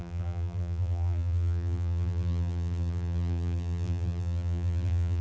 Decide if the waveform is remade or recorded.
remade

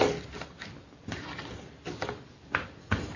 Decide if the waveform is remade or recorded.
recorded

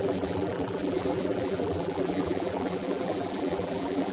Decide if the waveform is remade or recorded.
remade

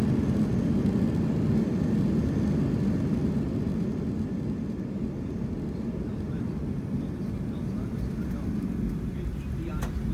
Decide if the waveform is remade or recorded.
recorded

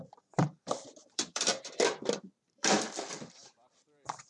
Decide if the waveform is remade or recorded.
remade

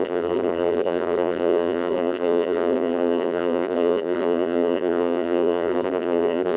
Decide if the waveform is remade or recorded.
remade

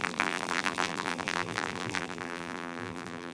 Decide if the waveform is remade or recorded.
remade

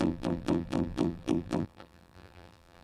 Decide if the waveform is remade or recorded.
remade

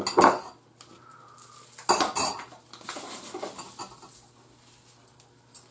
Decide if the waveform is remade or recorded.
recorded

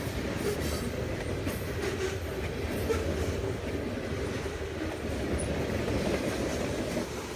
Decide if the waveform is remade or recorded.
recorded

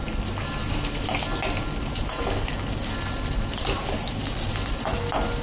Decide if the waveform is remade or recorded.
recorded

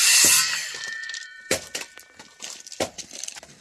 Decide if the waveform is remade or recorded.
remade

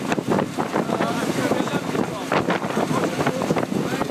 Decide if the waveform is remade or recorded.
remade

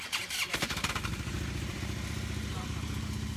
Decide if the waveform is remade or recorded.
remade